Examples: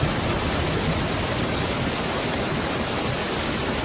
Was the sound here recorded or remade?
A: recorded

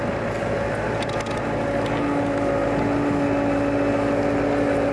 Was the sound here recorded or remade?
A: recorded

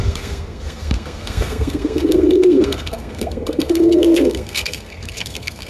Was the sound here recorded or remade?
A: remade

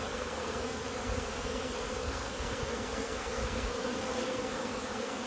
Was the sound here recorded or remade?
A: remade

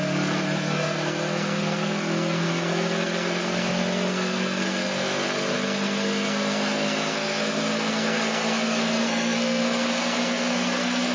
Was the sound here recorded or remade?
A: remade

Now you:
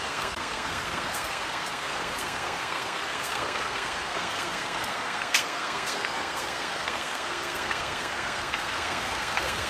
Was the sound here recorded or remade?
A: remade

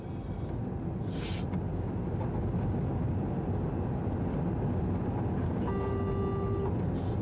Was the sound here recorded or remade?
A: recorded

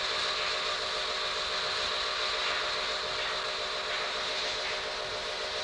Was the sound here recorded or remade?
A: recorded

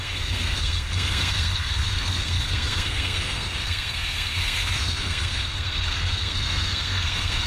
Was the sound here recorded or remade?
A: remade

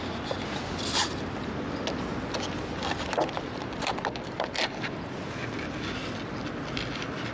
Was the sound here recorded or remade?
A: recorded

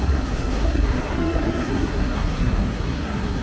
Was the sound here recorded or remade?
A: remade